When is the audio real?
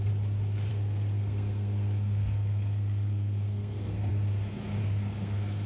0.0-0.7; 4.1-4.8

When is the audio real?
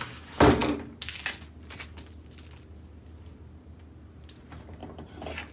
0.0-5.5